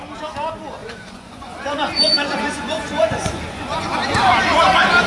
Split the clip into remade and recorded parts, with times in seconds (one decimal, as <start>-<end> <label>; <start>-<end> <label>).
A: 0.0-0.8 recorded; 0.8-3.9 remade; 3.9-5.1 recorded